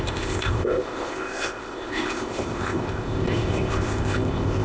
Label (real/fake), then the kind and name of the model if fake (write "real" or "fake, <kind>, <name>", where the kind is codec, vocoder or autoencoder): fake, codec, ZipCodec